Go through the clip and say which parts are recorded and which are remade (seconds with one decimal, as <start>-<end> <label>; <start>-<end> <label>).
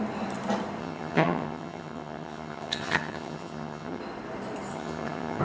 0.0-0.8 recorded; 0.8-4.0 remade; 4.0-4.7 recorded; 4.7-5.4 remade